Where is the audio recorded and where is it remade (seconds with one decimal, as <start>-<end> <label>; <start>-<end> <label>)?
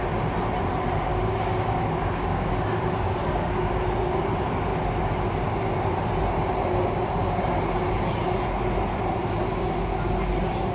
0.0-1.1 recorded; 1.1-2.5 remade; 2.5-3.2 recorded; 3.2-3.7 remade; 3.7-10.7 recorded